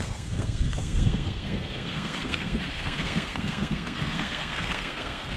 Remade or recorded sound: remade